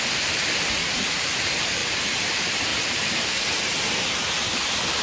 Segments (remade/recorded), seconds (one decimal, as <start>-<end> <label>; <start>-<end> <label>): 0.0-0.8 recorded; 0.8-1.4 remade; 1.4-5.0 recorded